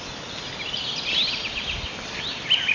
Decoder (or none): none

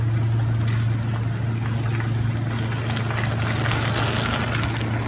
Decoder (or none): none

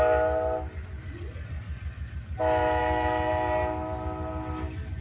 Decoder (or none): none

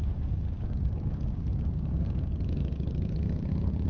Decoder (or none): codec, DAC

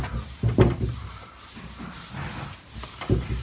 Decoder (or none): none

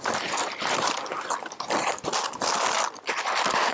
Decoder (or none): none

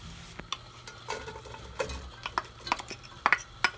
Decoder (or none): none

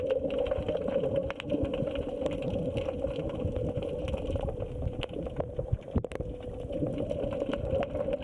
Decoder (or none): none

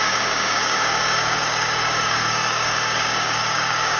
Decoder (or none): codec, DAC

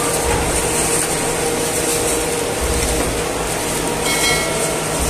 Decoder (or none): none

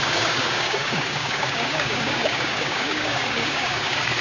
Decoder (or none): codec, DAC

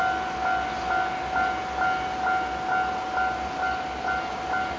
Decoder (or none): none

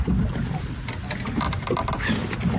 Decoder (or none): none